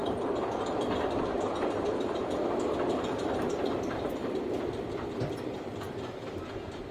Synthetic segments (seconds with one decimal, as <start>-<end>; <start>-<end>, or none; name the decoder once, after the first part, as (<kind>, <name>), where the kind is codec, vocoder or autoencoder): 4.2-6.4 (vocoder, BigVGAN v2)